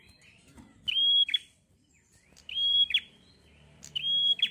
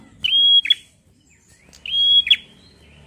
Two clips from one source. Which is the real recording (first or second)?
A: second